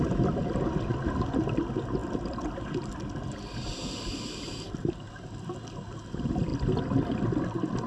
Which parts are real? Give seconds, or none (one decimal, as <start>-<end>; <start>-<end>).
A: 0.0-7.9